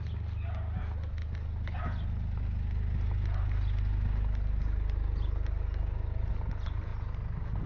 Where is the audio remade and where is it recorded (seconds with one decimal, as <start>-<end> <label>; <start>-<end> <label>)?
0.0-7.7 recorded